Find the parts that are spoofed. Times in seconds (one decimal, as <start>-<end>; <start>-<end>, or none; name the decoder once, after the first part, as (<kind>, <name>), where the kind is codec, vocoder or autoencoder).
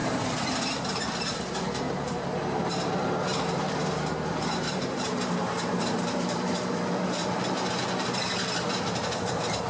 0.0-9.7 (vocoder, BigVGAN v2)